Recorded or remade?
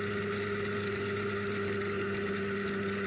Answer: recorded